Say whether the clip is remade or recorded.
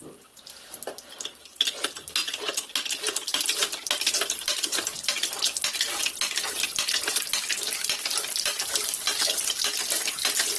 recorded